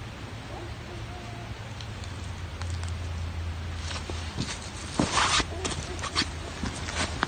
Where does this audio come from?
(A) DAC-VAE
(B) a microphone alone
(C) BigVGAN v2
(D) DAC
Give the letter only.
B